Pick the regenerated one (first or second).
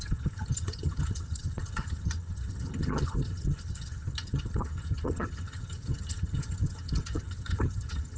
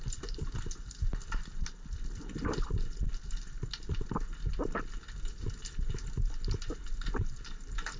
first